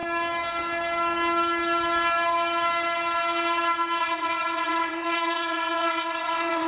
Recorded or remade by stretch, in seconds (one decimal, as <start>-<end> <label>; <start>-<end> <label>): 0.0-4.0 recorded; 4.0-6.7 remade